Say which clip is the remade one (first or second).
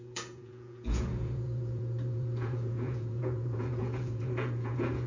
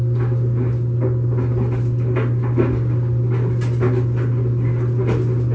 first